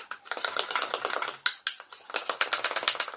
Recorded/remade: recorded